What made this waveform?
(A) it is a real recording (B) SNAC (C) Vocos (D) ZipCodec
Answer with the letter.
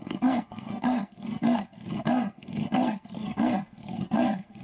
B